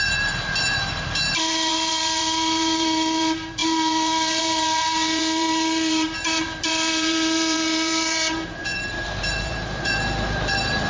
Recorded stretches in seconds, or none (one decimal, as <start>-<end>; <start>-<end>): none